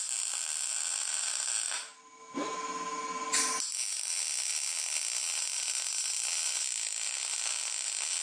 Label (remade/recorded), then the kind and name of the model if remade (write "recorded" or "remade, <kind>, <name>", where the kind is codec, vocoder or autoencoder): recorded